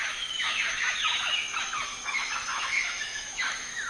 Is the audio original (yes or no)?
no